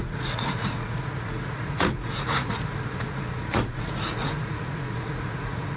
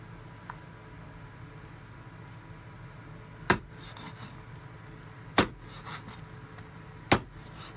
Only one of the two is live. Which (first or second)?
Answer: second